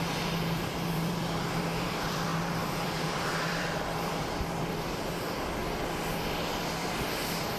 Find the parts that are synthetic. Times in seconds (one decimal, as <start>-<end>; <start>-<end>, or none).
0.0-5.6; 6.6-7.6

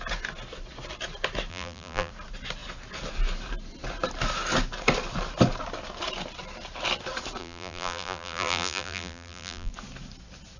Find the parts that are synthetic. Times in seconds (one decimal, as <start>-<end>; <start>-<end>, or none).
1.5-2.1; 7.4-9.7

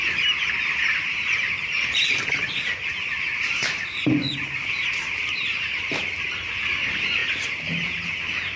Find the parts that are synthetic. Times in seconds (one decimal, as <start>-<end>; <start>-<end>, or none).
0.9-6.0

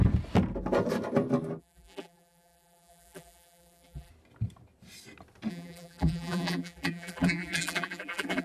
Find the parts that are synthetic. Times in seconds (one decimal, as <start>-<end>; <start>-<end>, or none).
1.6-4.1; 5.5-8.4

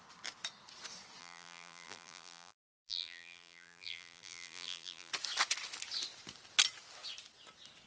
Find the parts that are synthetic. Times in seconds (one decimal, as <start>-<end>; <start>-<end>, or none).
1.2-5.1

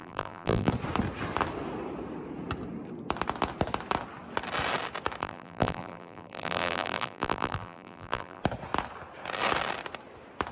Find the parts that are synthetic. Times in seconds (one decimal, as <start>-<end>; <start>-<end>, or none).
0.0-0.7; 5.2-8.4